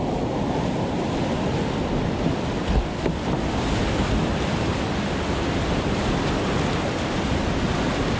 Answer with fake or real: real